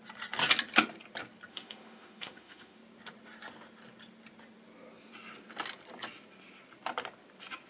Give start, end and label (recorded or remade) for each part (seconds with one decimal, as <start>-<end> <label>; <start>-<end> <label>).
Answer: 0.0-1.5 recorded; 1.5-2.8 remade; 2.8-7.7 recorded

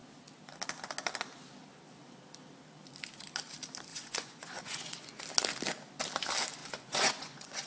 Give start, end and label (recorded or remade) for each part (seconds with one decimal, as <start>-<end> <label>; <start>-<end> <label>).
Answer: 0.0-3.9 recorded; 3.9-5.2 remade; 5.2-6.6 recorded; 6.6-7.7 remade

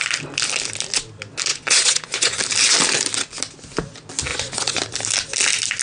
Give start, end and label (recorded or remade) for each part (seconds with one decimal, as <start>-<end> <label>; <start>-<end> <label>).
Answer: 0.0-1.5 recorded; 1.5-2.4 remade; 2.4-4.3 recorded; 4.3-4.8 remade; 4.8-5.8 recorded